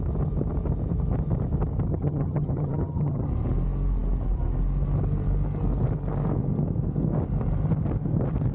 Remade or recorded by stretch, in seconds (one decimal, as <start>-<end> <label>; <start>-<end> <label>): 0.0-1.9 recorded; 1.9-3.3 remade; 3.3-8.5 recorded